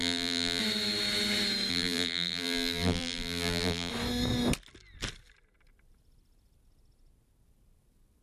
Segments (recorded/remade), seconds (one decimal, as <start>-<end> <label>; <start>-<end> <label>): 0.0-0.6 remade; 0.6-1.7 recorded; 1.7-3.9 remade; 3.9-8.2 recorded